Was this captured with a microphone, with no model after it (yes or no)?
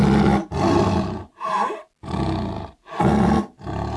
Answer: yes